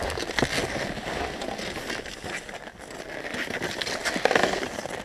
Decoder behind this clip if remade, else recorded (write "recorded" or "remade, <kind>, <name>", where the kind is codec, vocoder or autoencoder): recorded